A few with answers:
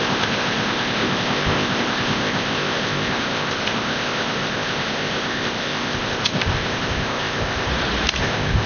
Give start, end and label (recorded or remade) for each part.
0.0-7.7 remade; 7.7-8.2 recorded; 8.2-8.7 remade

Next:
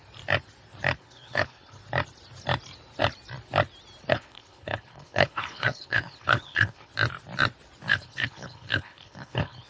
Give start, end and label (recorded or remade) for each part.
0.0-1.0 recorded; 1.0-1.8 remade; 1.8-4.1 recorded; 4.1-6.9 remade; 6.9-7.9 recorded; 7.9-9.7 remade

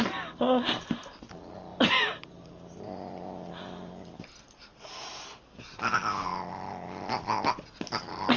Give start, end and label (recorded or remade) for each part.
0.0-1.7 recorded; 1.7-3.5 remade; 3.5-8.4 recorded

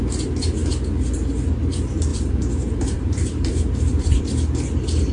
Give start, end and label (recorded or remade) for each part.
0.0-2.1 recorded; 2.1-4.2 remade; 4.2-5.1 recorded

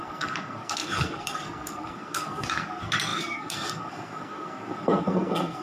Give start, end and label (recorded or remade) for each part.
0.0-5.6 remade

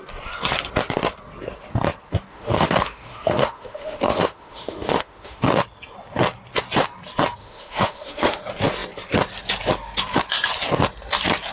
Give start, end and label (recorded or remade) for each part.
0.0-2.3 recorded; 2.3-5.5 remade; 5.5-7.4 recorded; 7.4-8.4 remade; 8.4-11.5 recorded

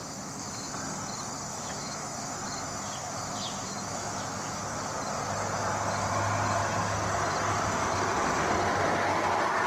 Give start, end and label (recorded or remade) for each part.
0.0-0.7 remade; 0.7-1.5 recorded; 1.5-4.6 remade; 4.6-9.7 recorded

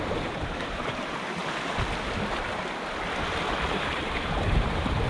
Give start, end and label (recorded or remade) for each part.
0.0-1.4 remade; 1.4-3.7 recorded; 3.7-5.1 remade